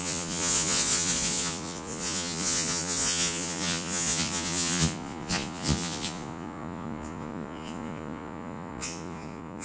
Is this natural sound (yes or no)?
no